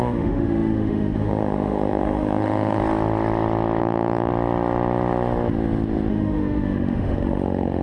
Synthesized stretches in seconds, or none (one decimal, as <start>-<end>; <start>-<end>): 0.0-2.8; 3.8-4.3; 6.1-7.8